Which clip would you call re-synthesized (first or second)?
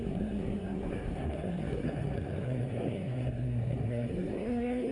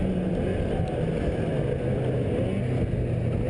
first